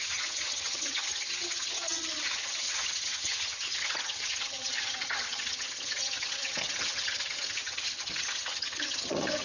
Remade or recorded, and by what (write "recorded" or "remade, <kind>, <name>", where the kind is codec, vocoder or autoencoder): remade, vocoder, HiFi-GAN